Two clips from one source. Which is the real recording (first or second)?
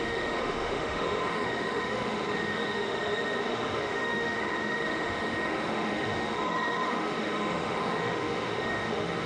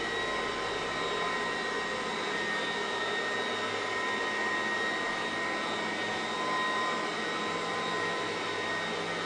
second